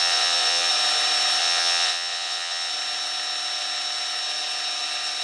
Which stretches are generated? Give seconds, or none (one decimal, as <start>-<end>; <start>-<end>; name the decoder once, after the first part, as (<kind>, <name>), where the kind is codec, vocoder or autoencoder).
0.0-0.7 (vocoder, WaveNeXt); 1.4-2.7